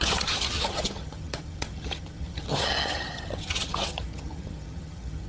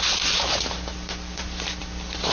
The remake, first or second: first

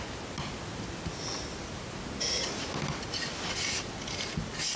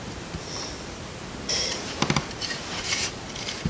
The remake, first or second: second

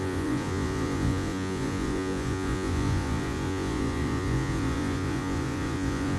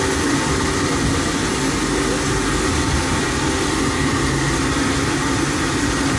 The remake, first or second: first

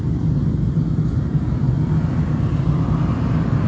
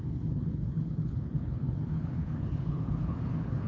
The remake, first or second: second